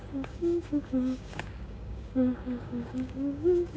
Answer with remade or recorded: remade